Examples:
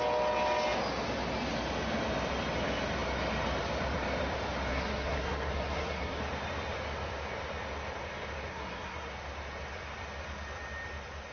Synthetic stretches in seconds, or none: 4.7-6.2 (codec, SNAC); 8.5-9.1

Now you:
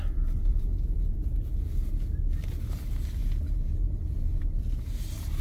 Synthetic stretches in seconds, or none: 0.5-1.6 (vocoder, Vocos); 3.2-4.4

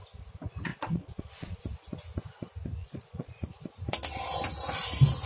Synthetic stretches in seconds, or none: 0.7-1.6 (vocoder, Vocos); 2.8-3.5

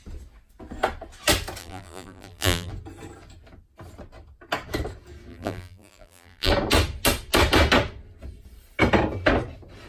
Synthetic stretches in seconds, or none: 1.6-2.7 (vocoder, BigVGAN v2); 5.3-6.5

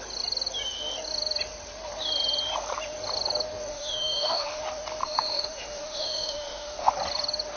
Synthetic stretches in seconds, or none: 3.7-4.6 (autoencoder, DAC-VAE); 5.0-6.9